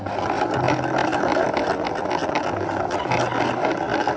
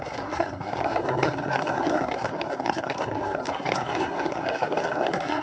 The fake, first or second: second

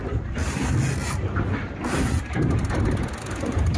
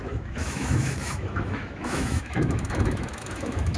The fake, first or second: second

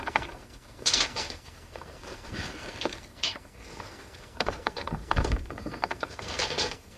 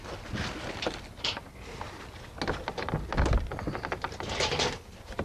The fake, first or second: first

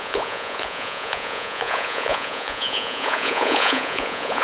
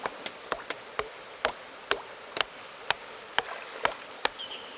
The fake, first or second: first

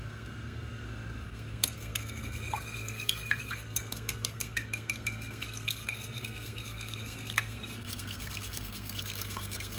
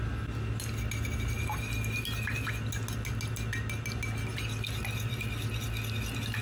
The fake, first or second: first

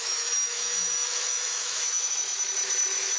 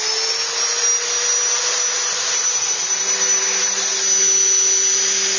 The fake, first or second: first